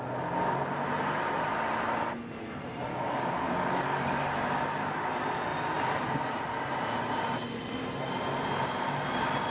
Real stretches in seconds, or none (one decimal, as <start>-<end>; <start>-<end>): 0.0-2.9; 4.3-9.5